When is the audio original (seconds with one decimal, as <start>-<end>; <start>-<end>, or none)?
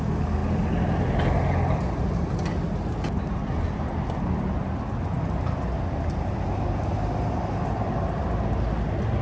0.0-9.2